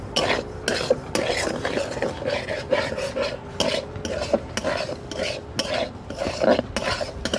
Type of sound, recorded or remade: recorded